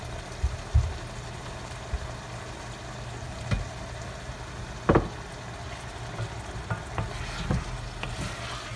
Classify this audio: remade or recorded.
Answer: recorded